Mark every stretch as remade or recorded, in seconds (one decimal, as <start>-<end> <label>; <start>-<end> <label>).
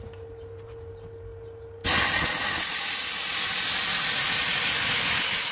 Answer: 0.0-5.5 recorded